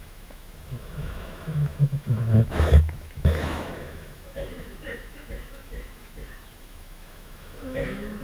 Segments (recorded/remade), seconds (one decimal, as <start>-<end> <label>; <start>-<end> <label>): 0.0-8.2 remade